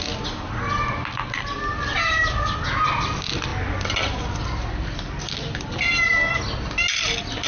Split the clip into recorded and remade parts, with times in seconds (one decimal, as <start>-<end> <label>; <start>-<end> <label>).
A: 0.0-7.5 recorded